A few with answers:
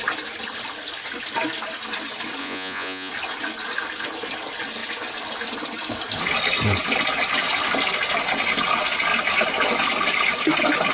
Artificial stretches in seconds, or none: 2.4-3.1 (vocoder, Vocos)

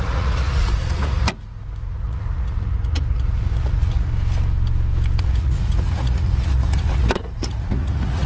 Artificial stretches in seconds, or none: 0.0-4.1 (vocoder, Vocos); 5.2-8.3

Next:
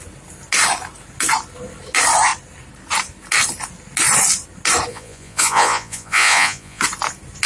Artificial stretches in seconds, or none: 4.9-6.8 (vocoder, Vocos)

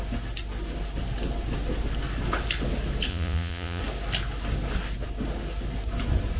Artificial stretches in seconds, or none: 3.1-3.8 (vocoder, Vocos)

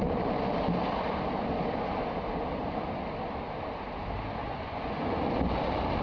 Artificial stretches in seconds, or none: 4.4-5.2 (vocoder, Vocos)

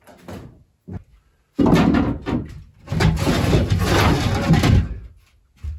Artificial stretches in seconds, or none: none

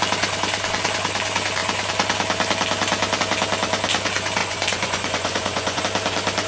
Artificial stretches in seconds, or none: 4.4-5.8 (vocoder, Vocos)